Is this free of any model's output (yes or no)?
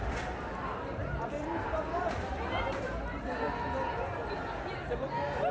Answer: yes